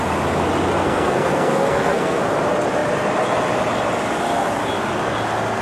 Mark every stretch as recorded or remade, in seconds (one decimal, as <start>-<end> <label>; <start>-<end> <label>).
0.0-0.8 recorded; 0.8-2.2 remade; 2.2-5.6 recorded